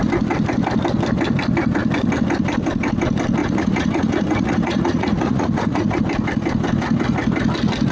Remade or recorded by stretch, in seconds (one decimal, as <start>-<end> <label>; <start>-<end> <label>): 0.0-3.4 recorded; 3.4-6.0 remade; 6.0-7.9 recorded